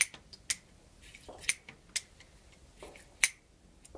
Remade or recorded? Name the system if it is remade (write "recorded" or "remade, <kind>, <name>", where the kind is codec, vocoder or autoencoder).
recorded